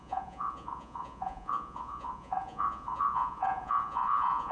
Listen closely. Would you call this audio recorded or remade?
remade